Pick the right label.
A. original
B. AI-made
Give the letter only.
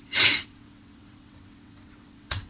B